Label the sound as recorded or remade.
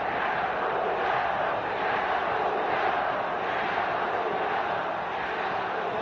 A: recorded